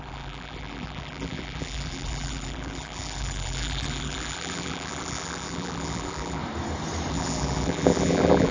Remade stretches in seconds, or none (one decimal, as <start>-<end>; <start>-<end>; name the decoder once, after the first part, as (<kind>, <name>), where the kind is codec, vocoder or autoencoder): 0.0-6.4 (vocoder, BigVGAN v2); 7.1-8.5